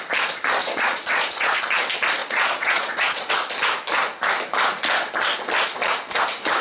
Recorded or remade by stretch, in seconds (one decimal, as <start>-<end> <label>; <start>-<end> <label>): 0.0-0.6 recorded; 0.6-1.6 remade; 1.6-2.2 recorded; 2.2-3.3 remade; 3.3-6.6 recorded